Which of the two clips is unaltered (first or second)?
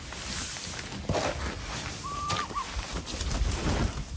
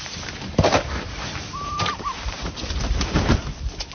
first